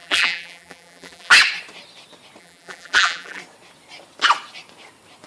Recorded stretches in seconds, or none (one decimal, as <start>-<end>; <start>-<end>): 1.3-2.4; 3.4-5.3